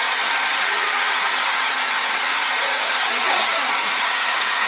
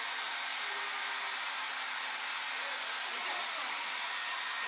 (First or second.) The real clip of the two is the second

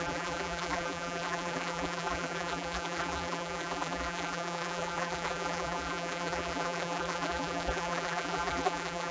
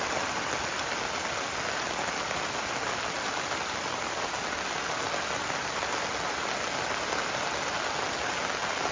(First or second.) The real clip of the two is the second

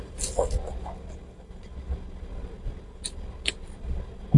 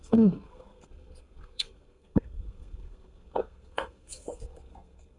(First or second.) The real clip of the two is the first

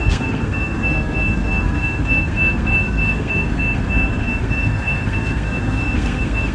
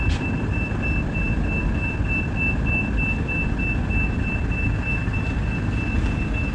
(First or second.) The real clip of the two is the second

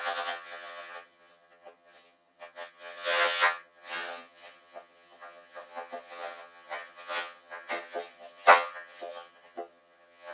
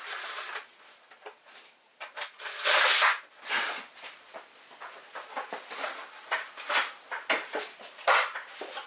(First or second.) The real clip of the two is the second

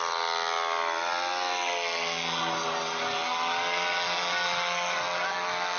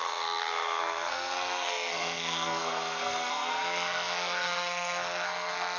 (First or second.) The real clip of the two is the first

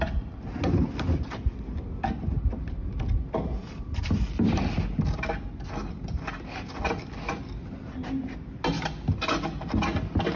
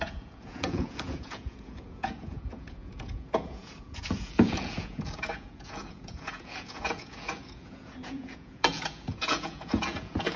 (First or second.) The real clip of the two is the first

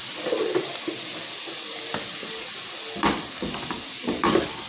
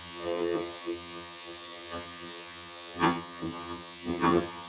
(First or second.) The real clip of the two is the first